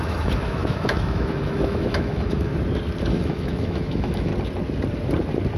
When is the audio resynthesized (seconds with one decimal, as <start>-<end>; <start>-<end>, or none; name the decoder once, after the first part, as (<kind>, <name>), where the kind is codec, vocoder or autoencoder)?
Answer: 0.0-2.5 (autoencoder, DAC-VAE); 3.0-4.3